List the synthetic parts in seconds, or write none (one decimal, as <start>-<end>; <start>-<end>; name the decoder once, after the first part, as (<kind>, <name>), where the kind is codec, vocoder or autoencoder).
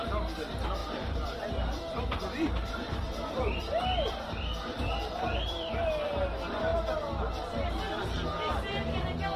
0.8-5.9 (vocoder, BigVGAN v2)